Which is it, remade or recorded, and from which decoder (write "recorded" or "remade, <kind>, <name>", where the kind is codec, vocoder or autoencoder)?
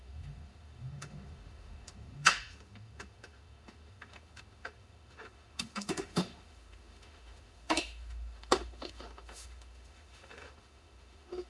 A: remade, autoencoder, DAC-VAE